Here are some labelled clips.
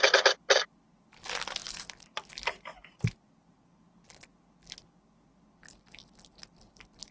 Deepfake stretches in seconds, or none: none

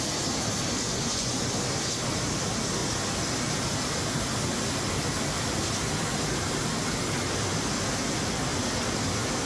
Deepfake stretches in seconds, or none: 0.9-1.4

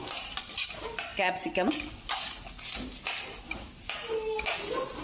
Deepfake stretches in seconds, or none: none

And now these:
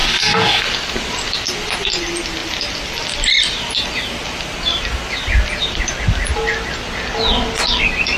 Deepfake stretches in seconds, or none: 0.0-0.6